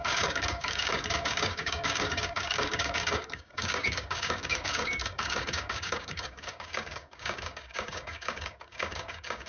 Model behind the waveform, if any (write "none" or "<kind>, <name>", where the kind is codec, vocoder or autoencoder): codec, DAC